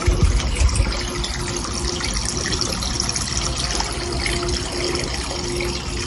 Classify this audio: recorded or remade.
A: recorded